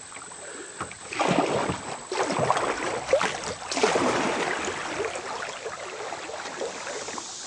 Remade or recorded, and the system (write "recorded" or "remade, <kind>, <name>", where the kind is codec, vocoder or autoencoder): recorded